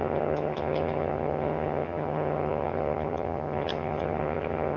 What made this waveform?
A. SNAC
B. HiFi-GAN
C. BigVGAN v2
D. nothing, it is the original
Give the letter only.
B